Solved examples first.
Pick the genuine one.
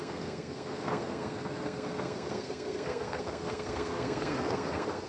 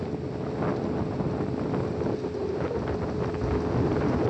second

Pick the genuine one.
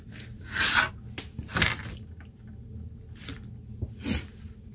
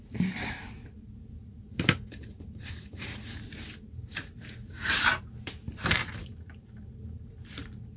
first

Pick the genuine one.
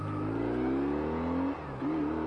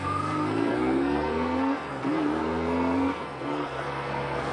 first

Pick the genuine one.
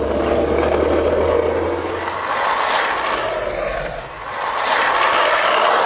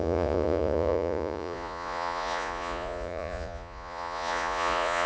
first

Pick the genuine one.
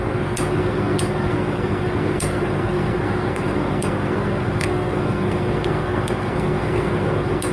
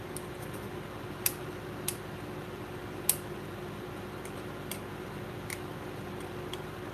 second